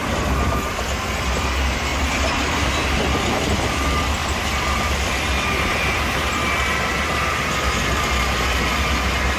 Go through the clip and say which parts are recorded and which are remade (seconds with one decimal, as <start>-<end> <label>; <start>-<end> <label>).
0.0-0.8 remade; 0.8-4.2 recorded; 4.2-8.8 remade; 8.8-9.4 recorded